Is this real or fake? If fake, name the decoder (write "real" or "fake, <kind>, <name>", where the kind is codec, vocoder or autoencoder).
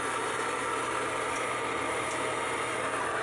real